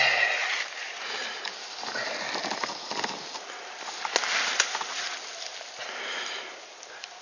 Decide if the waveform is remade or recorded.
recorded